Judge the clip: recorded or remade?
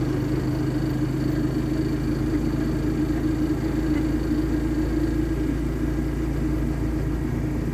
recorded